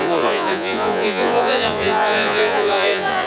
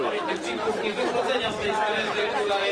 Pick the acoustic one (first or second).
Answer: second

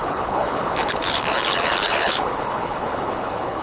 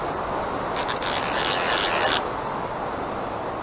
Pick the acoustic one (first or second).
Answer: second